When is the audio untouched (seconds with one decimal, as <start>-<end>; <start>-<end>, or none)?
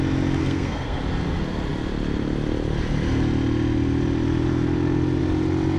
0.0-0.4; 1.0-5.8